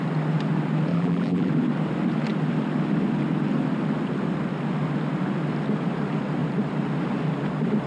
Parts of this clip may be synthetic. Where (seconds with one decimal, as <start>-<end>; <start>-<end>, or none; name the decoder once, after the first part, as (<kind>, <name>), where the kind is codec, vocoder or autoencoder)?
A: 0.9-1.5 (vocoder, BigVGAN v2)